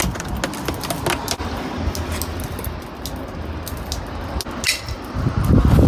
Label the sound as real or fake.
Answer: real